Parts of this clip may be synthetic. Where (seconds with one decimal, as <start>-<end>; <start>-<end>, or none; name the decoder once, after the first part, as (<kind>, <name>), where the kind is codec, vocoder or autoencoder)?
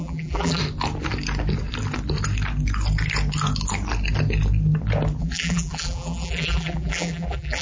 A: 0.0-0.6 (vocoder, BigVGAN v2); 5.2-7.6